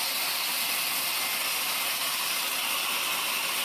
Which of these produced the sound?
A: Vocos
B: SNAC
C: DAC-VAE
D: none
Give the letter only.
D